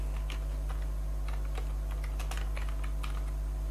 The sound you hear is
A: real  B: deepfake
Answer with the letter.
A